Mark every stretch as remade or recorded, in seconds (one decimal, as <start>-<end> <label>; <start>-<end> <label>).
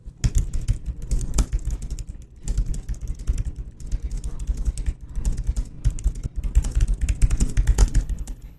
0.0-7.8 recorded; 7.8-8.6 remade